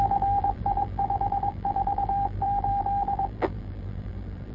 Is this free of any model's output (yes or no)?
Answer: no